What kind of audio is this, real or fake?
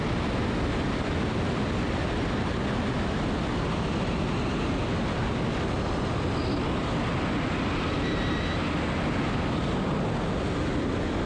real